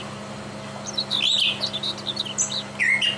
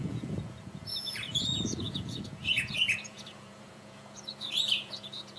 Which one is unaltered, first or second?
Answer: first